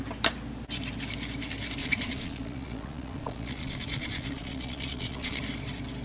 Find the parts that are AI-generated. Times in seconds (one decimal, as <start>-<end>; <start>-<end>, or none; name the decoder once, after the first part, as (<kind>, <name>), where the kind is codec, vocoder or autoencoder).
1.8-5.4 (vocoder, Vocos)